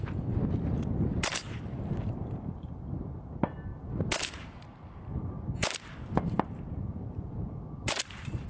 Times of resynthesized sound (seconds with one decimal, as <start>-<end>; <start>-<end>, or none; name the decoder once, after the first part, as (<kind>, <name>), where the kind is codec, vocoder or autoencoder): 1.3-3.0 (vocoder, BigVGAN v2); 3.7-8.5